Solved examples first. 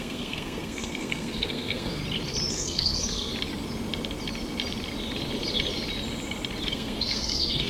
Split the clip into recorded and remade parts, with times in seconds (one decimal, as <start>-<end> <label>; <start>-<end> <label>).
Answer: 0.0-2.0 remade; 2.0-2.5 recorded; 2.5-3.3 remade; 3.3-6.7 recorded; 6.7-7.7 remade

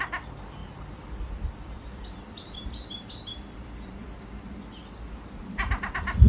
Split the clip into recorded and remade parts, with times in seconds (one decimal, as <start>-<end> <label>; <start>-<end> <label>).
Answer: 0.0-0.6 recorded; 0.6-4.2 remade; 4.2-6.3 recorded

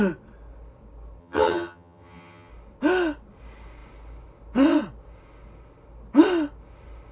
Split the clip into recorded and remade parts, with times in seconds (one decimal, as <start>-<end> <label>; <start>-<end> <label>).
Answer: 0.0-1.2 recorded; 1.2-2.5 remade; 2.5-7.1 recorded

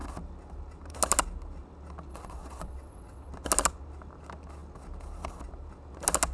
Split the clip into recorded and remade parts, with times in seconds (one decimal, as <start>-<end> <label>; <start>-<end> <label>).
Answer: 0.0-2.1 recorded; 2.1-3.3 remade; 3.3-6.3 recorded

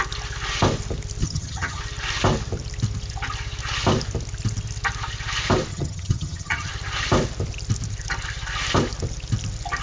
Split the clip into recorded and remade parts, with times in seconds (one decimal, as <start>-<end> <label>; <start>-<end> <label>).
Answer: 0.0-1.2 recorded; 1.2-1.8 remade; 1.8-5.7 recorded; 5.7-6.7 remade; 6.7-9.8 recorded